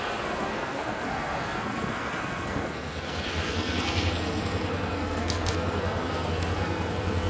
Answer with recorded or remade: remade